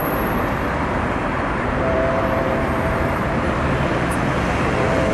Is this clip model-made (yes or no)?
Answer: yes